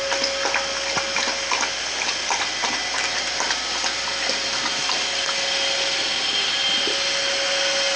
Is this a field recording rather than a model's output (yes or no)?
yes